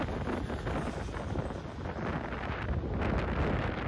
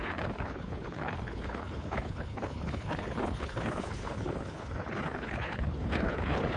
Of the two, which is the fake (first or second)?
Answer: second